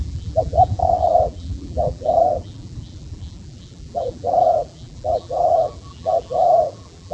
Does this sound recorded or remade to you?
remade